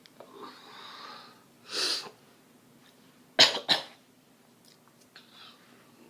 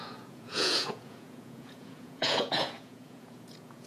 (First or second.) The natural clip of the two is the first